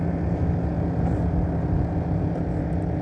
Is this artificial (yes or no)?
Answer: no